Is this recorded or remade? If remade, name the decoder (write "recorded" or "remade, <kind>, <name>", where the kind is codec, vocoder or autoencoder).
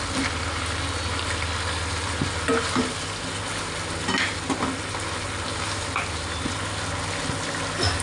recorded